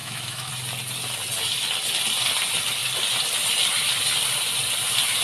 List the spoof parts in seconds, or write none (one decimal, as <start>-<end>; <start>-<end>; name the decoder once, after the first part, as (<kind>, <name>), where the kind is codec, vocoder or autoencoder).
0.0-0.5 (autoencoder, DAC-VAE)